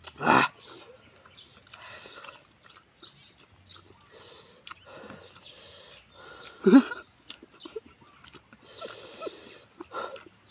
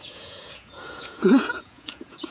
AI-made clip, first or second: second